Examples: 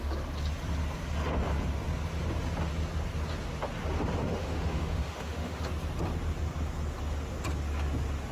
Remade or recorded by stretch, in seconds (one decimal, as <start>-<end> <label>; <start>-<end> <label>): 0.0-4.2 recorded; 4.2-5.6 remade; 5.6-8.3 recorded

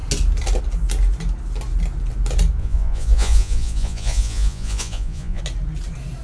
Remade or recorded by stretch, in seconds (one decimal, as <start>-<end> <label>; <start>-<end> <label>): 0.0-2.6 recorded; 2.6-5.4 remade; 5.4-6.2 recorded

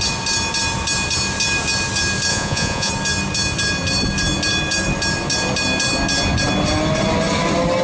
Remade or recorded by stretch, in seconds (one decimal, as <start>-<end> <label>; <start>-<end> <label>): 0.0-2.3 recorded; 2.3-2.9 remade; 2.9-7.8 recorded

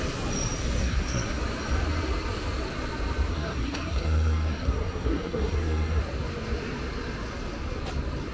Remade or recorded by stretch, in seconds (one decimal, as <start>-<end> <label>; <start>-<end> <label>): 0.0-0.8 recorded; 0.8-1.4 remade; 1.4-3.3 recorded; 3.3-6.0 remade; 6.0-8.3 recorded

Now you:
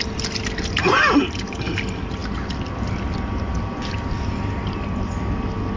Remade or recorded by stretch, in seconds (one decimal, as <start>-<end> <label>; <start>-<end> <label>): 0.0-5.8 recorded

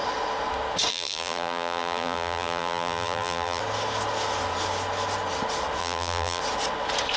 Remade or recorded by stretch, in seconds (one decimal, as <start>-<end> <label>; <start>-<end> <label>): 0.0-0.9 recorded; 0.9-3.6 remade; 3.6-5.8 recorded; 5.8-6.4 remade; 6.4-7.2 recorded